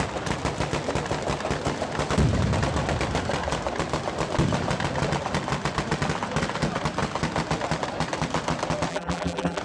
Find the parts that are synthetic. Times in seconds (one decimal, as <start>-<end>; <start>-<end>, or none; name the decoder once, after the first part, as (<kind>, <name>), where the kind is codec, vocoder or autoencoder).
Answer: 8.9-9.6 (vocoder, BigVGAN v2)